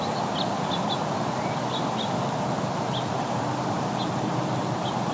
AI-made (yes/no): no